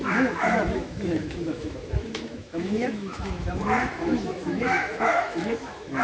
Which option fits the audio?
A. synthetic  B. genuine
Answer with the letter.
A